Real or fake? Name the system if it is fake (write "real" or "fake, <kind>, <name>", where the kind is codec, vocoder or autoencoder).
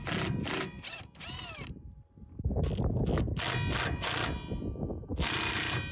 real